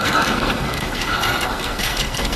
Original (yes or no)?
no